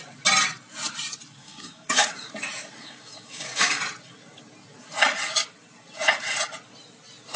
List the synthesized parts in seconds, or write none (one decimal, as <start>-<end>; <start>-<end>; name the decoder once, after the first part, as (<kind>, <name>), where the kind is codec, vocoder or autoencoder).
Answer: 1.4-2.3 (codec, DAC); 2.8-3.8